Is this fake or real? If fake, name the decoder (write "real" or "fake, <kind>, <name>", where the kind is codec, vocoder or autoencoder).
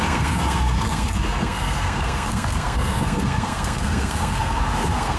fake, codec, SNAC